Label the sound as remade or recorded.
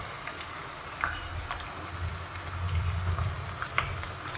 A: recorded